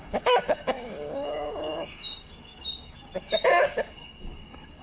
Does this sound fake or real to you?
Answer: fake